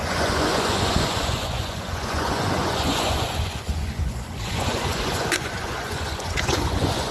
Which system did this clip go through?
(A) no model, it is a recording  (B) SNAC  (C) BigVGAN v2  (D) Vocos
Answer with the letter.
D